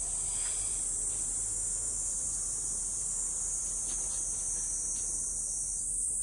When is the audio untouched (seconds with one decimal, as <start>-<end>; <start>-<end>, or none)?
0.0-1.5; 2.1-6.2